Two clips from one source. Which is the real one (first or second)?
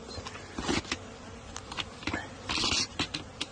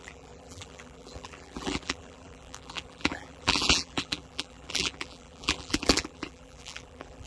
first